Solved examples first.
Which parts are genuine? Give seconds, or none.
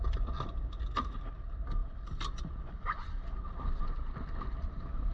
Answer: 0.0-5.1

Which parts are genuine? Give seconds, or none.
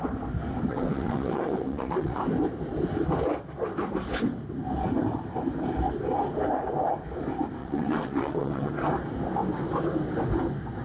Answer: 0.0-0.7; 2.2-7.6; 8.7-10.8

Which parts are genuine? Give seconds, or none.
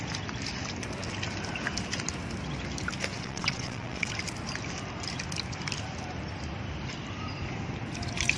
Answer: 0.0-3.1; 4.1-8.4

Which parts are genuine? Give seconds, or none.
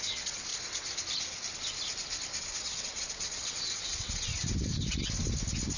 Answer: 0.5-2.4; 4.3-5.8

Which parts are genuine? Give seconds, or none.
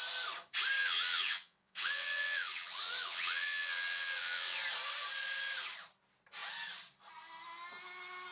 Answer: 0.0-0.8; 4.6-8.3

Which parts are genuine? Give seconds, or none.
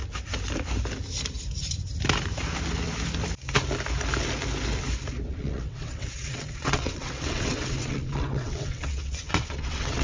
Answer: 0.0-5.3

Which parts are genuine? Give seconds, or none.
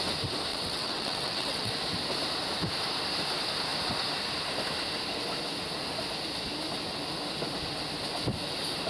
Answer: 0.0-0.5; 1.7-8.9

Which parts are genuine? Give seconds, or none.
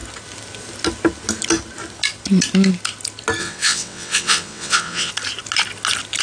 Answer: 0.0-3.4; 5.1-6.2